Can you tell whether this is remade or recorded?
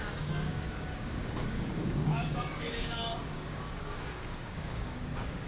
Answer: remade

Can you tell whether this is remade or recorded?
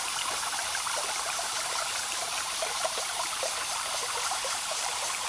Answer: remade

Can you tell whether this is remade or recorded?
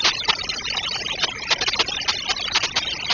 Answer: recorded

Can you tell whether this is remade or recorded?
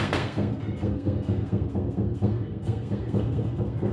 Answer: remade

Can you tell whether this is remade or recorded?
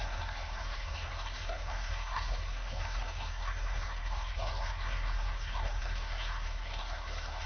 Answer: remade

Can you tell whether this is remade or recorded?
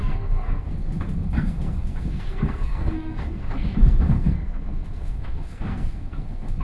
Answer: remade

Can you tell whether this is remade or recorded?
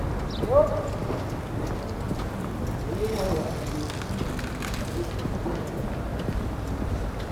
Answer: recorded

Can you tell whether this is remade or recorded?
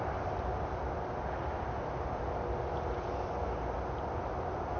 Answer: recorded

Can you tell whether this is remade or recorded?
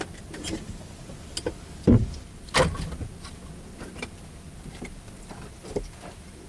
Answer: recorded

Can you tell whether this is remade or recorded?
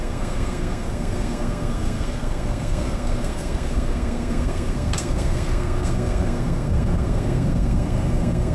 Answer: remade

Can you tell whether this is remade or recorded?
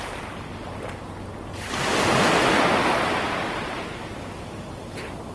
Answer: recorded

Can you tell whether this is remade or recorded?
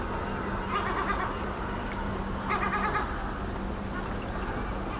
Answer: recorded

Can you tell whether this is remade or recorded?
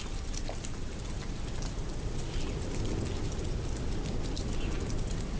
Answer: recorded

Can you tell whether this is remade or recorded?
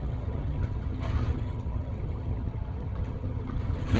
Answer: remade